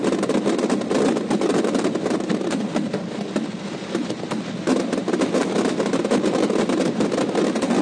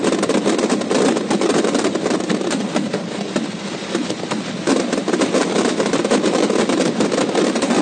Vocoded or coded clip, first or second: second